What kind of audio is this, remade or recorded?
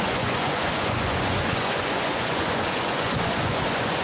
remade